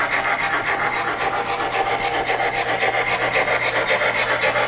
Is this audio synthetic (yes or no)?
no